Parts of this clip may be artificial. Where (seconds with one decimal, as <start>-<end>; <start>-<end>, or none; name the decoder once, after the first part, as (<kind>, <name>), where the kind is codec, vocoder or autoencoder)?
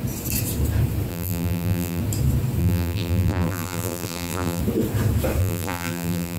1.1-2.0 (vocoder, BigVGAN v2); 2.6-4.6; 5.4-6.4